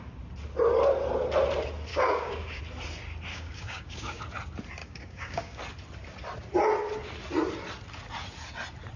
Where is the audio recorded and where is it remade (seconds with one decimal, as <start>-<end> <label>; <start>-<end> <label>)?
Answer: 0.0-1.9 recorded; 1.9-2.6 remade; 2.6-3.3 recorded; 3.3-4.2 remade; 4.2-4.8 recorded; 4.8-5.6 remade; 5.6-9.0 recorded